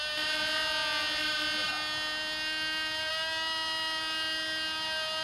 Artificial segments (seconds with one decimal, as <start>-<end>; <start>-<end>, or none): none